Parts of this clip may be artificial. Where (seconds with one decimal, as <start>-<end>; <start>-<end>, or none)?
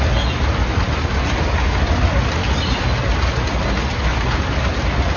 none